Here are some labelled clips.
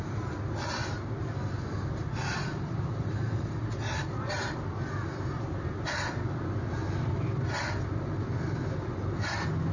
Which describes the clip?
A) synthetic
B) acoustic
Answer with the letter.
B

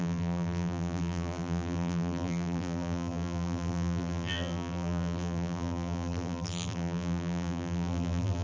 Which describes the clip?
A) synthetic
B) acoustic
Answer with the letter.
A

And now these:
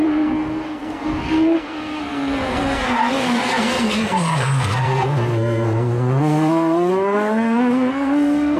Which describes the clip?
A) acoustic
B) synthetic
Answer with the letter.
B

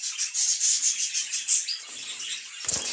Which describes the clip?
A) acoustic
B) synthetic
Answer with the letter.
A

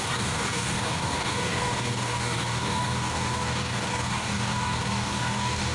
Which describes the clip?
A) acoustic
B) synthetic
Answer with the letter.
B